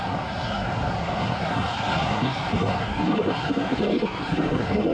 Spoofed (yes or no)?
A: yes